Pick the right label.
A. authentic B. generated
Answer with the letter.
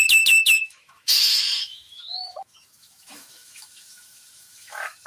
B